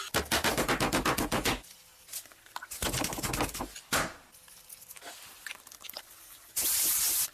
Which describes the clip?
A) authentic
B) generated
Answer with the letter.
A